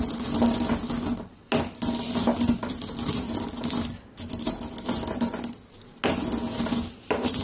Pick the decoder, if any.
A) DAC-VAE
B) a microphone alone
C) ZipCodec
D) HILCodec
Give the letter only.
B